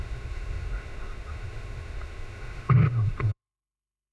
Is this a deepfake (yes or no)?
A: yes